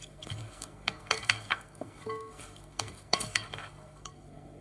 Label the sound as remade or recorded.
remade